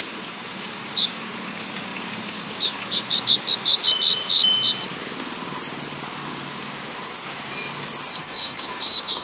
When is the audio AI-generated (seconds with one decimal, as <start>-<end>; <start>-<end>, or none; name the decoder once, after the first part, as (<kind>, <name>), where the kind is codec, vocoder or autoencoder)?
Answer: 0.0-3.8 (codec, DAC); 8.2-9.2